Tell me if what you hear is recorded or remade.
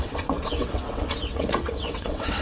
remade